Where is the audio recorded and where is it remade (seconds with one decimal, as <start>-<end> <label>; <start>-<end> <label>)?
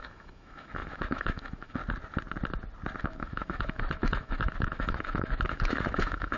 0.0-1.8 remade; 1.8-3.0 recorded; 3.0-6.4 remade